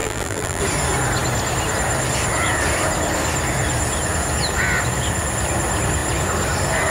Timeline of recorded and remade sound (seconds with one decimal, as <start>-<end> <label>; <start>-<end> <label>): 0.0-0.6 remade; 0.6-6.9 recorded